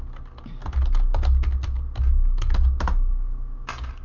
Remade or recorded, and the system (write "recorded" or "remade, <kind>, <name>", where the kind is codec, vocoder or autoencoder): recorded